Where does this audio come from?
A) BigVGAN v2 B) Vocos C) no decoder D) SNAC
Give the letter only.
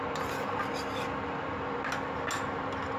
C